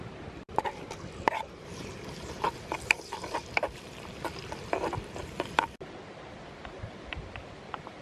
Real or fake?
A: fake